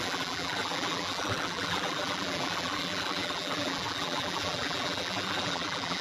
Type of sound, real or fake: fake